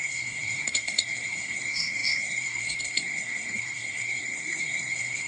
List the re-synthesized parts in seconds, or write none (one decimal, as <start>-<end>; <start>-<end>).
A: 0.0-5.3

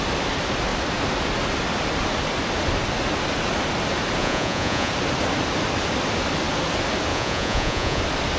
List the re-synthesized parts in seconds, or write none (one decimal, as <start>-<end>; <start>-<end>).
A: 4.2-4.9; 7.1-8.0